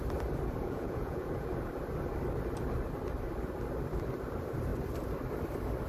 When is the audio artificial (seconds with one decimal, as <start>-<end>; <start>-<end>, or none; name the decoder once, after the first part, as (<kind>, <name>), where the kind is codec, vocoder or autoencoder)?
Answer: 0.6-1.5 (vocoder, Vocos)